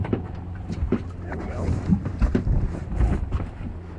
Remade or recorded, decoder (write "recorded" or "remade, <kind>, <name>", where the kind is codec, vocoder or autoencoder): remade, vocoder, BigVGAN v2